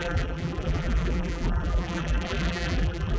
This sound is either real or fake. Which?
fake